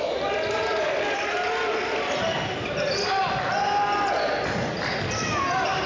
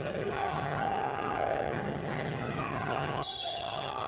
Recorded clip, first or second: first